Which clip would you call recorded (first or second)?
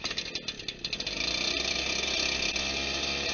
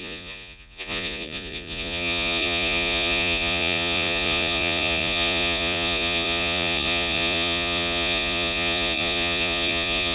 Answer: first